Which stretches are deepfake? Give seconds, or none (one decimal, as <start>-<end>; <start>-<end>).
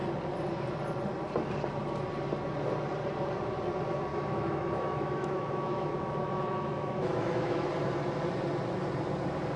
4.1-7.7